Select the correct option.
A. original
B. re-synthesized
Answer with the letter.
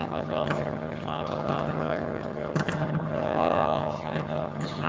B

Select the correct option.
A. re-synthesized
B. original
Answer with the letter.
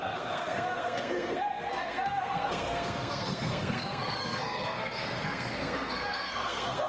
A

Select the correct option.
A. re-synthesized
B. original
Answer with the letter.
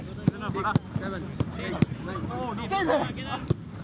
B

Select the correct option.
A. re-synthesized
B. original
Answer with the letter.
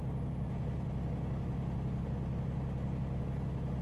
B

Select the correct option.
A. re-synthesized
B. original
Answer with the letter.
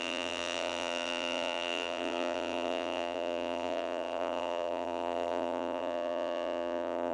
A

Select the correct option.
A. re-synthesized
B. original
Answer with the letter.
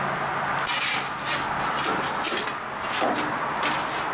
B